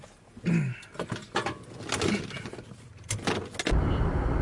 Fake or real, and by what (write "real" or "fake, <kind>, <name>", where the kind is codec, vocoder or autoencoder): real